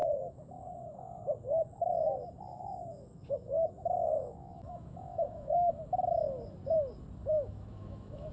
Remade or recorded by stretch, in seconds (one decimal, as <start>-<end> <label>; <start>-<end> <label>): 0.0-1.9 remade; 1.9-2.5 recorded; 2.5-5.7 remade; 5.7-7.2 recorded; 7.2-8.3 remade

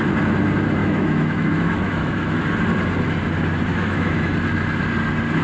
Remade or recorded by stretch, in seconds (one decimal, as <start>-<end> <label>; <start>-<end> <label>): 0.0-0.8 recorded; 0.8-2.4 remade; 2.4-3.7 recorded; 3.7-4.3 remade; 4.3-5.4 recorded

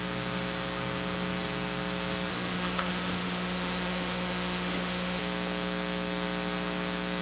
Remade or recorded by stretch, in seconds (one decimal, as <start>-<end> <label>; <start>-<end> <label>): 0.0-2.3 recorded; 2.3-5.2 remade; 5.2-7.2 recorded

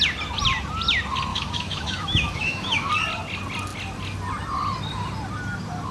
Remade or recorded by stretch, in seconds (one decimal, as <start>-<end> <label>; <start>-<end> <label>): 0.0-1.3 recorded; 1.3-2.9 remade; 2.9-5.9 recorded

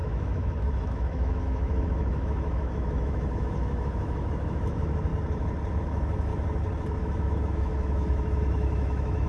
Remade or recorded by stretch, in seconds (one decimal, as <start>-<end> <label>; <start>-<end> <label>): 0.0-5.1 remade; 5.1-5.7 recorded; 5.7-6.3 remade; 6.3-7.0 recorded; 7.0-9.3 remade

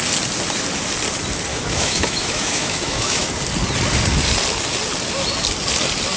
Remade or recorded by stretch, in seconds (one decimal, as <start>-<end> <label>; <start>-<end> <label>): 0.0-1.5 recorded; 1.5-3.3 remade; 3.3-6.2 recorded